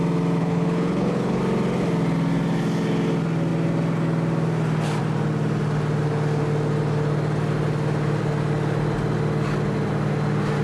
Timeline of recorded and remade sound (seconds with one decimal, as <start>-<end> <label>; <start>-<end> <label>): 0.0-0.4 recorded; 0.4-1.4 remade; 1.4-10.6 recorded